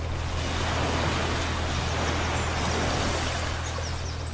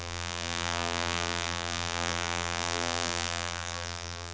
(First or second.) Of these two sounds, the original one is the first